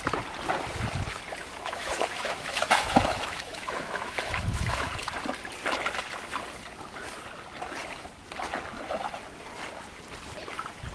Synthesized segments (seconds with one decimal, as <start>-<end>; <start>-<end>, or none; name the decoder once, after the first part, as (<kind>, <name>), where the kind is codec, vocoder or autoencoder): 1.4-4.9 (autoencoder, DAC-VAE)